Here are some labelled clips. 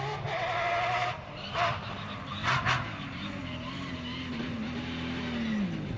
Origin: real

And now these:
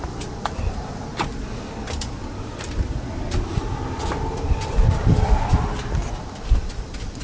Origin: real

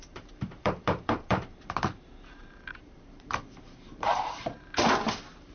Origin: fake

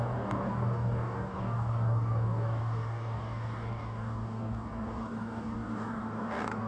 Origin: fake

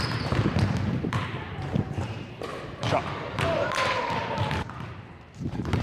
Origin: fake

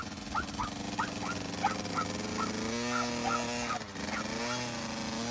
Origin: real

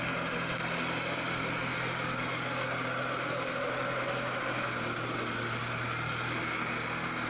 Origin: real